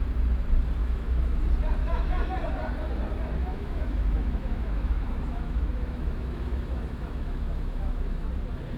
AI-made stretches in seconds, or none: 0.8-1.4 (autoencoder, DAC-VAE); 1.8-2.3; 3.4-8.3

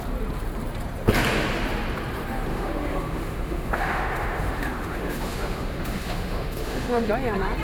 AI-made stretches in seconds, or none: 2.5-7.1 (autoencoder, DAC-VAE)